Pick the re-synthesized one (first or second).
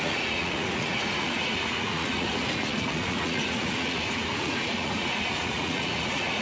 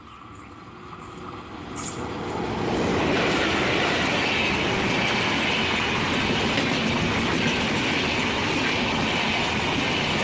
first